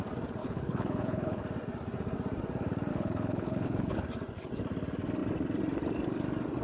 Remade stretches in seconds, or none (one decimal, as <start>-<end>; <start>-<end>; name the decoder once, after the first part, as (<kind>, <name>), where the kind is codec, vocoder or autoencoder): 0.4-1.4 (codec, HILCodec); 2.9-4.0